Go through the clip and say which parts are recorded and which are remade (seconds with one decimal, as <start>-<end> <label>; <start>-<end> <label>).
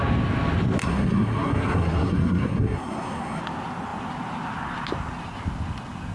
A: 0.0-0.8 recorded; 0.8-3.4 remade; 3.4-6.1 recorded